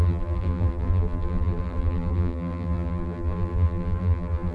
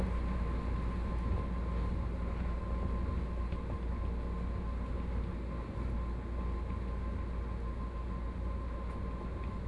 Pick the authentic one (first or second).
second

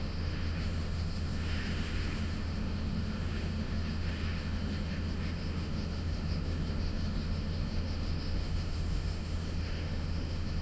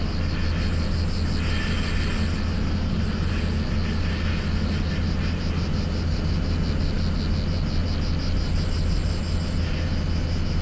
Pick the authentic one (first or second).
second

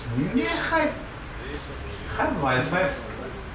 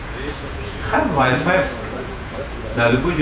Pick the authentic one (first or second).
first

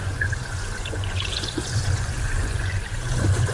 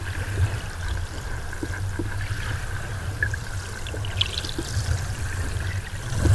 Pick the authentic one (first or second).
second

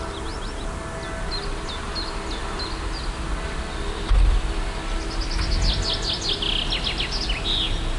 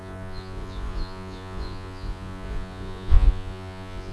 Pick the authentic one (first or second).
first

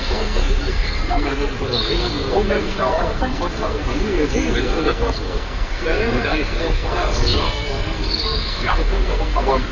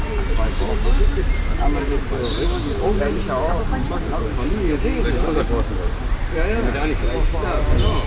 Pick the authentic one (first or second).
second